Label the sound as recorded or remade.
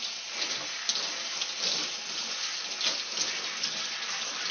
recorded